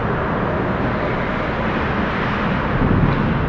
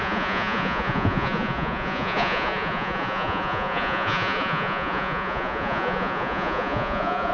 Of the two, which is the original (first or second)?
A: first